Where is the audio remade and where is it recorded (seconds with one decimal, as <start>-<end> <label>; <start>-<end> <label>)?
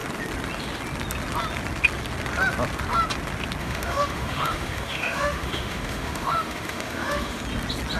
0.0-3.6 recorded; 3.6-7.4 remade; 7.4-8.0 recorded